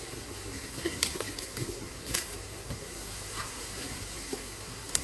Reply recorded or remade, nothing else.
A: remade